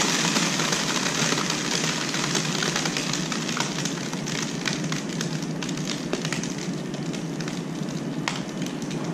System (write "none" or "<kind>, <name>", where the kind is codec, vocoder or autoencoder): none